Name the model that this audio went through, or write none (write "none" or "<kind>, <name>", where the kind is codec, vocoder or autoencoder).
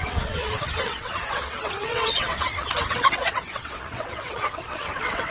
vocoder, WaveNeXt